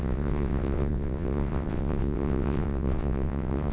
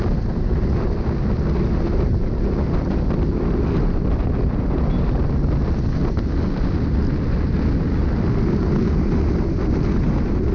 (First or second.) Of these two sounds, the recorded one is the second